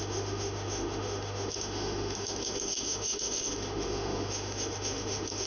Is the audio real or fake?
fake